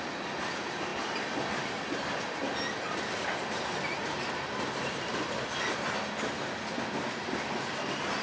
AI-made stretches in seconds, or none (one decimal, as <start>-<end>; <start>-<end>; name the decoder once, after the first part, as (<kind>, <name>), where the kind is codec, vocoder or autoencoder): none